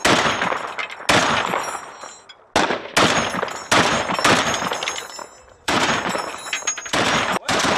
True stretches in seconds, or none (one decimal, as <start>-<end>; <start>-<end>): 0.0-5.2